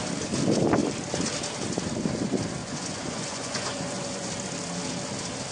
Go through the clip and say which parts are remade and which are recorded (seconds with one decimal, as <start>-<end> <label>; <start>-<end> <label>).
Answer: 0.0-2.6 recorded; 2.6-4.3 remade; 4.3-5.5 recorded